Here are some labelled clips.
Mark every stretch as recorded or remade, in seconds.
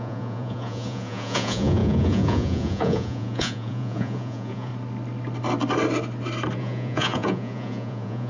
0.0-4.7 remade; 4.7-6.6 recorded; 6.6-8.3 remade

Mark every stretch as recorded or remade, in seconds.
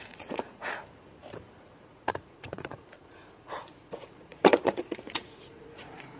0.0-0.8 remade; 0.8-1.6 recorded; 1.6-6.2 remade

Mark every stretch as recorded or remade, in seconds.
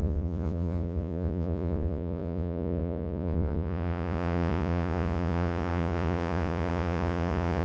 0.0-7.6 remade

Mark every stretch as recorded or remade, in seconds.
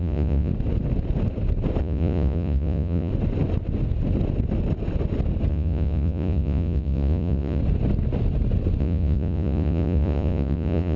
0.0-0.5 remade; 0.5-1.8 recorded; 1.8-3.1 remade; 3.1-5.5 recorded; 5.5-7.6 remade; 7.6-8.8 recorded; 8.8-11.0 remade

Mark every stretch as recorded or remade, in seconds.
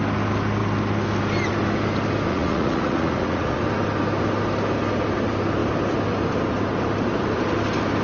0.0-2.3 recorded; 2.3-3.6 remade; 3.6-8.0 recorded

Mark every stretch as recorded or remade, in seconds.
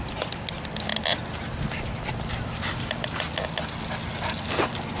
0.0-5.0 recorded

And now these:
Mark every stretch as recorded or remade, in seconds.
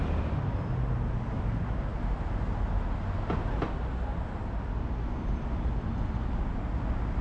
0.0-7.2 recorded